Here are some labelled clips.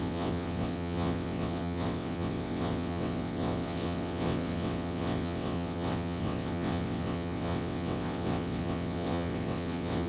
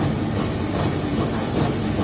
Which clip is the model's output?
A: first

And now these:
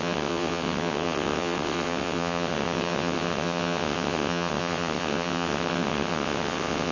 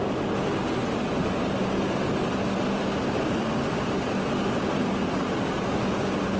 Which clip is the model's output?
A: first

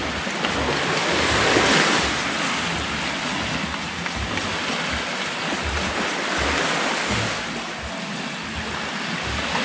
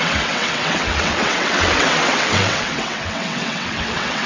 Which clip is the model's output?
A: second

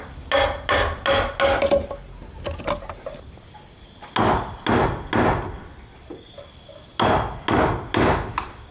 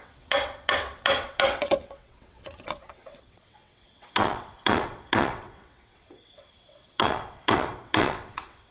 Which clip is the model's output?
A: second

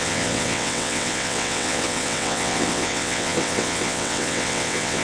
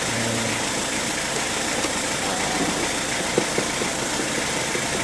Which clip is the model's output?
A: first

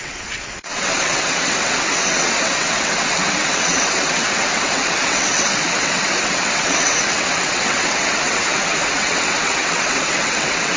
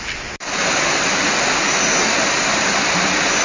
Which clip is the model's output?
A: first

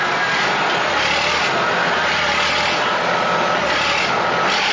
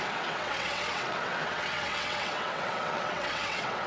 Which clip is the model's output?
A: second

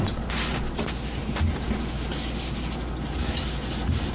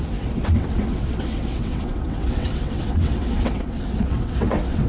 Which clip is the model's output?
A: second